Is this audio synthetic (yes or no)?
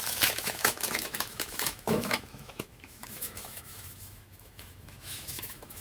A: yes